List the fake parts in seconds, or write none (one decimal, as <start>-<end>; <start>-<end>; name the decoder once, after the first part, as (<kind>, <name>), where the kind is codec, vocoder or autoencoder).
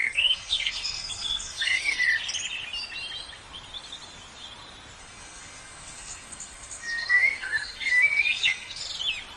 0.0-2.0 (codec, SNAC); 5.0-8.8